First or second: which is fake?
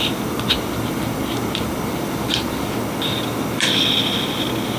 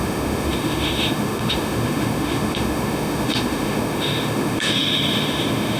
second